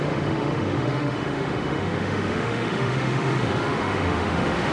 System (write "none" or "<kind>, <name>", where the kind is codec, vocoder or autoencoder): autoencoder, DAC-VAE